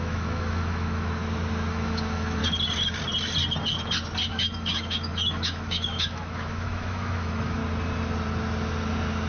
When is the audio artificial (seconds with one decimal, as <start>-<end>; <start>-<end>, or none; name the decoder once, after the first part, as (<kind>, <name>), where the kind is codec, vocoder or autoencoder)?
0.0-1.2 (autoencoder, DAC-VAE); 1.7-2.4; 4.3-7.6